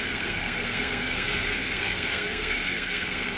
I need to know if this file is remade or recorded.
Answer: remade